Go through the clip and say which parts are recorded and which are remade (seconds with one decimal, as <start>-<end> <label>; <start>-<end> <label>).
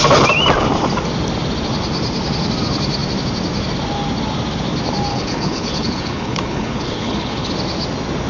0.0-5.1 recorded; 5.1-7.5 remade; 7.5-8.3 recorded